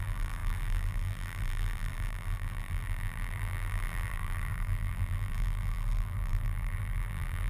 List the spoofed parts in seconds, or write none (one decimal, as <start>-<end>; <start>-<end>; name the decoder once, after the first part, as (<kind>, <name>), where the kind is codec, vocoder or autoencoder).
0.0-7.5 (vocoder, BigVGAN v2)